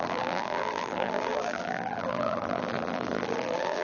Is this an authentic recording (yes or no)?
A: no